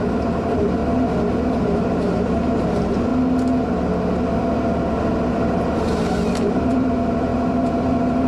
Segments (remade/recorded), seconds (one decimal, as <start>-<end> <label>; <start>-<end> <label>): 0.0-0.8 remade; 0.8-1.6 recorded; 1.6-3.1 remade; 3.1-5.3 recorded; 5.3-8.3 remade